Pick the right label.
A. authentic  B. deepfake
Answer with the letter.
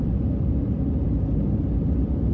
A